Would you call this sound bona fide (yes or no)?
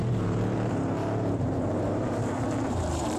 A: no